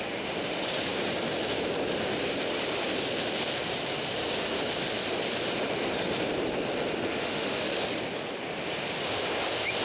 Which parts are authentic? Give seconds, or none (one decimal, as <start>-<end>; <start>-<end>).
0.0-7.1; 7.8-9.8

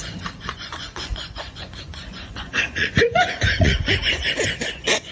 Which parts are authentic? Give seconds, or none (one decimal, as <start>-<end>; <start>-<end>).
none